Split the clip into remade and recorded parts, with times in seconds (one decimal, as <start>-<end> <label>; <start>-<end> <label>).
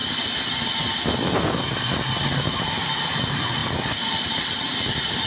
0.0-5.3 recorded